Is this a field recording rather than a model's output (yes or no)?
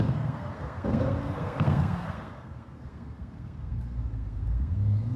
no